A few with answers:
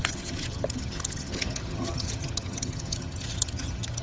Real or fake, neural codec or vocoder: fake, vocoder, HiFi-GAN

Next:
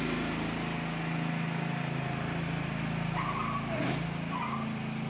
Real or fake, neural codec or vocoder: real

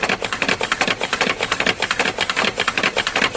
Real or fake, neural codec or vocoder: real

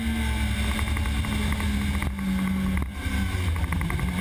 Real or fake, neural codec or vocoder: real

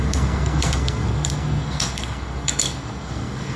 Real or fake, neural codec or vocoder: fake, codec, SNAC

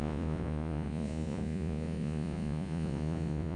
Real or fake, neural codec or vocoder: fake, vocoder, Vocos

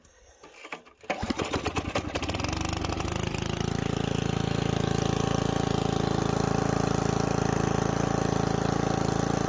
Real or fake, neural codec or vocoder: real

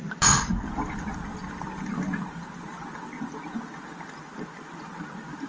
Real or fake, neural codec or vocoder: real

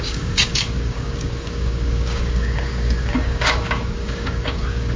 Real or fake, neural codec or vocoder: fake, codec, DAC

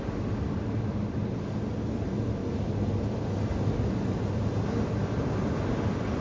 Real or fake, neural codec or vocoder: real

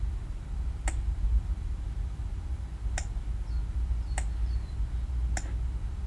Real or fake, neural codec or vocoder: real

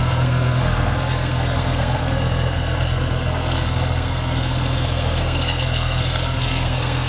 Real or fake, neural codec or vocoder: fake, codec, SNAC